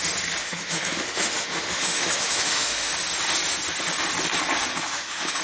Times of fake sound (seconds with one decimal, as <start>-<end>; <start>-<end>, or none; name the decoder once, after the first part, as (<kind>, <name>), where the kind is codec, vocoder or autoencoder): 0.4-2.9 (autoencoder, DAC-VAE); 4.7-5.4